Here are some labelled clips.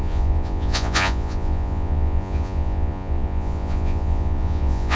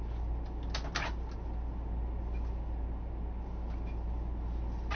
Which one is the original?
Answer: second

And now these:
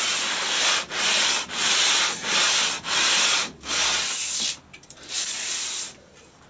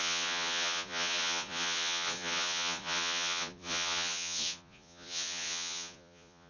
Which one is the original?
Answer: first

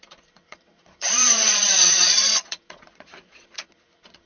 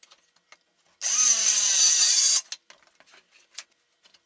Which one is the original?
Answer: second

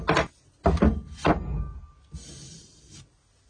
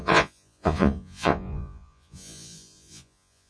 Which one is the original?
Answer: first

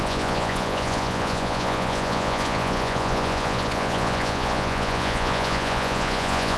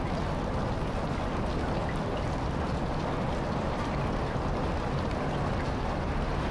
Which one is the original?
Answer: second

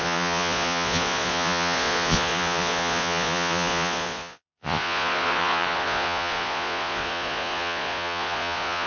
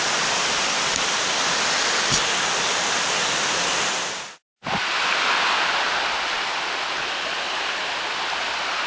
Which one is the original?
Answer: second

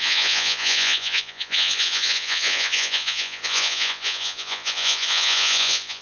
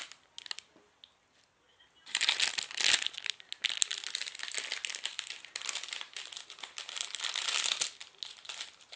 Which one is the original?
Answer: second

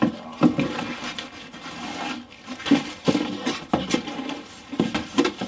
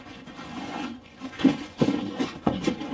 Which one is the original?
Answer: first